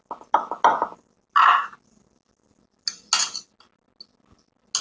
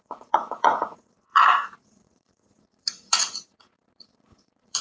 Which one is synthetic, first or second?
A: second